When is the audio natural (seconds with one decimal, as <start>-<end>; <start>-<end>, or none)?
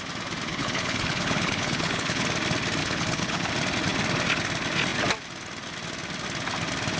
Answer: 0.0-0.5; 2.2-2.8; 3.5-7.0